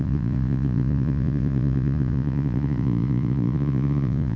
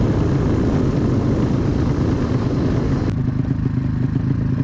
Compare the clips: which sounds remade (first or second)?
first